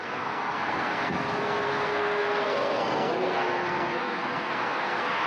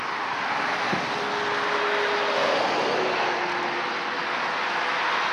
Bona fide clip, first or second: second